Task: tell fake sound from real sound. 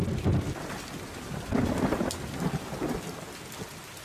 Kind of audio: real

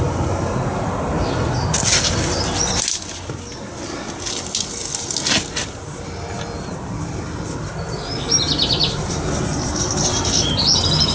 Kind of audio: real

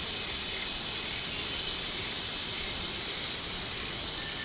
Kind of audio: real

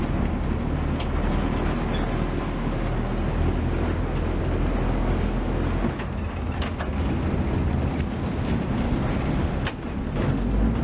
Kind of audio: real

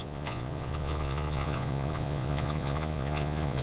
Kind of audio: fake